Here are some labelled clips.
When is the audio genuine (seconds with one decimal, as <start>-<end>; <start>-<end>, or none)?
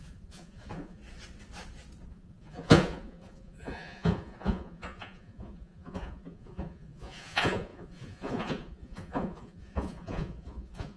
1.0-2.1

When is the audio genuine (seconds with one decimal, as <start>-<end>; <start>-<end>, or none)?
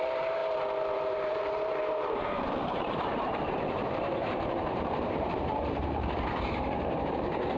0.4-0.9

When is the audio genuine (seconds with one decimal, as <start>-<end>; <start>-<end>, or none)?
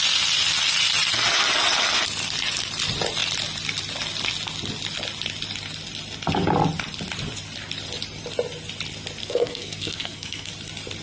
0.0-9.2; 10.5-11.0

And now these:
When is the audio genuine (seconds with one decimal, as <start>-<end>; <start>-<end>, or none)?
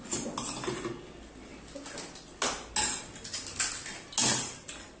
0.0-5.0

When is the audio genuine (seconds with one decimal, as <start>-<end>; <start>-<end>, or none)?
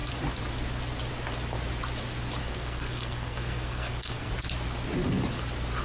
0.0-2.4; 4.3-5.8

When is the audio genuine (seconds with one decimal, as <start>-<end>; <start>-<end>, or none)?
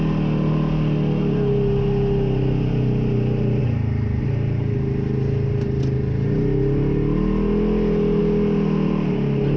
0.0-9.6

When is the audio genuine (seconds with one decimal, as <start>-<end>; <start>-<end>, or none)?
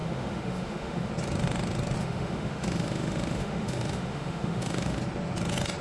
1.1-2.0; 5.0-5.8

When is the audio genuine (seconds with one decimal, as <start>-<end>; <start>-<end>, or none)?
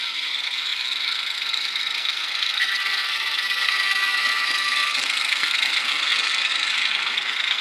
none